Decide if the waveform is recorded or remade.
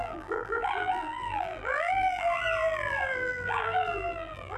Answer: remade